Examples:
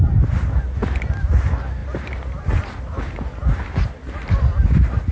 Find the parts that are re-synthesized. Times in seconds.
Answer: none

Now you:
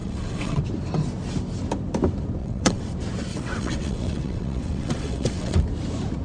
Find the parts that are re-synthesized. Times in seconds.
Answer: 0.0-0.6; 2.4-2.9; 3.3-5.6

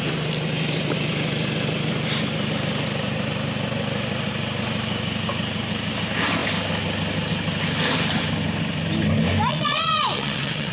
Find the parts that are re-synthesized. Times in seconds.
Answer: 9.5-10.7

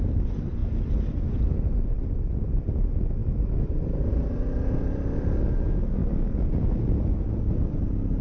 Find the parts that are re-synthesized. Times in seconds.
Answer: none

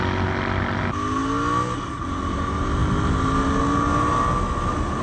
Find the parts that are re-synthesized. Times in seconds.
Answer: none

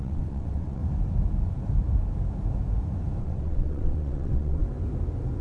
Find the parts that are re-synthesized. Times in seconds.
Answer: 0.0-0.8; 3.2-4.6